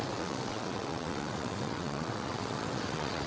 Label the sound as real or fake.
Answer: fake